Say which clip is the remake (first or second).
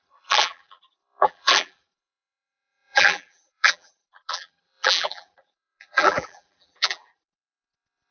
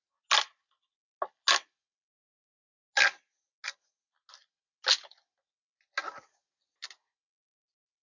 first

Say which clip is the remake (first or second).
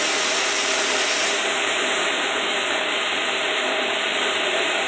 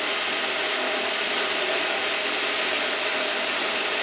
first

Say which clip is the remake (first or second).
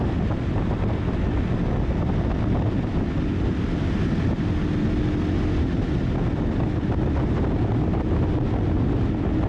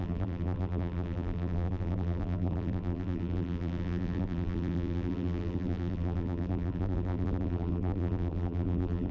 second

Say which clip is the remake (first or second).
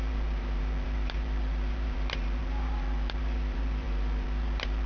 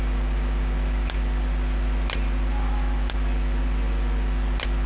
first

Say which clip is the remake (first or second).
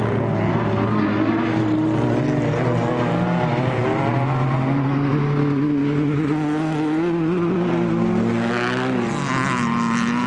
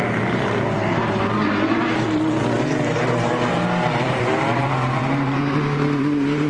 second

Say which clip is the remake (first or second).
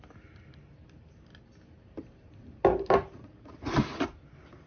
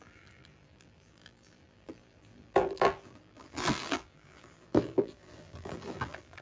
second